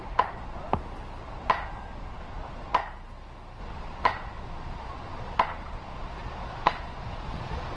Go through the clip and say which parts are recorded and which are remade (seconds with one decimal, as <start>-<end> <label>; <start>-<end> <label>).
0.0-0.7 remade; 0.7-1.2 recorded; 1.2-2.8 remade; 2.8-3.6 recorded; 3.6-7.8 remade